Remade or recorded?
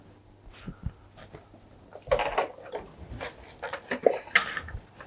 recorded